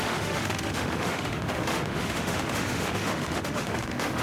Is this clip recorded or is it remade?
remade